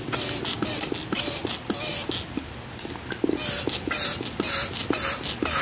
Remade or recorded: recorded